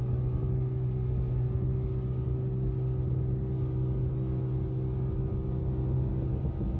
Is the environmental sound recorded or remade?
recorded